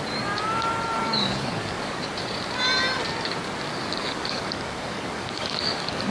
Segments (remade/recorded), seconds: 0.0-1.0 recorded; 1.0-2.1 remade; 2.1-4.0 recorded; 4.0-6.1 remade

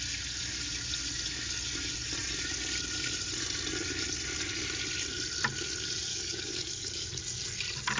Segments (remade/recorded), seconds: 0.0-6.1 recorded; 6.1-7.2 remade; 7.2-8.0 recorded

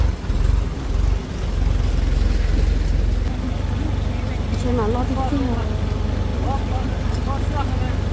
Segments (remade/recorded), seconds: 0.0-8.1 recorded

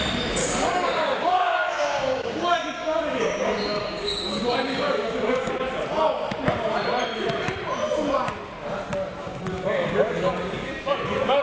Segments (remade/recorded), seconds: 0.0-0.4 recorded; 0.4-5.5 remade; 5.5-9.2 recorded; 9.2-10.7 remade; 10.7-11.4 recorded

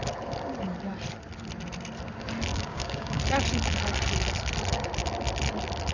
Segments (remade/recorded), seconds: 0.0-2.5 recorded; 2.5-3.2 remade; 3.2-5.9 recorded

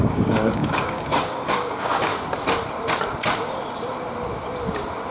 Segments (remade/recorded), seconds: 0.0-2.1 remade; 2.1-5.1 recorded

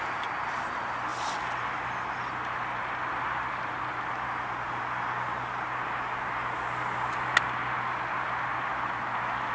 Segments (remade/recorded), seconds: 0.0-9.5 recorded